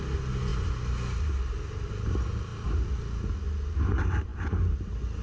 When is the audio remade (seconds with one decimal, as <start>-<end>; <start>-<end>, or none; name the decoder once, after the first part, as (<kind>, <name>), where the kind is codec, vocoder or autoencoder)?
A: none